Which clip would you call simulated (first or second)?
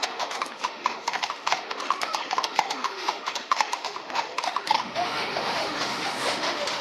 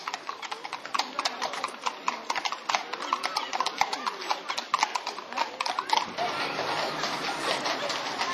first